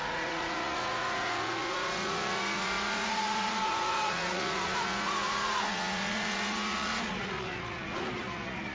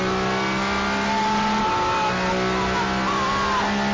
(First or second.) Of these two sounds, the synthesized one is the first